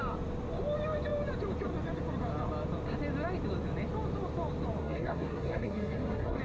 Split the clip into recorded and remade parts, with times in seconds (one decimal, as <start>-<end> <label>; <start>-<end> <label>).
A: 0.0-4.8 recorded; 4.8-6.4 remade